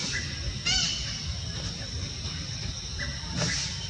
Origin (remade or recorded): recorded